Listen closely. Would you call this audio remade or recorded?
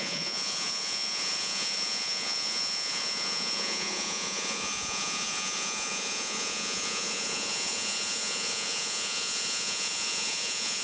remade